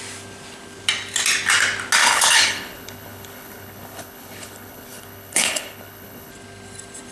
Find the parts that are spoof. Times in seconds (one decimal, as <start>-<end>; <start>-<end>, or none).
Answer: 2.0-6.3